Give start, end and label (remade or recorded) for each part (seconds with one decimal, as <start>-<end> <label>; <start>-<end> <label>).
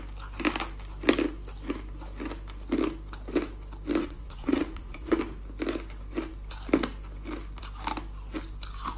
0.0-4.0 recorded; 4.0-5.2 remade; 5.2-9.0 recorded